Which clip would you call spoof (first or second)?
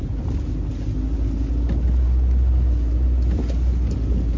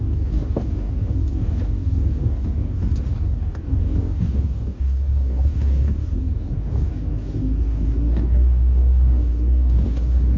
second